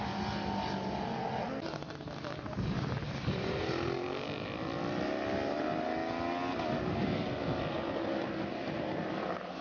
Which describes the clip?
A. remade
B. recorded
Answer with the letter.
B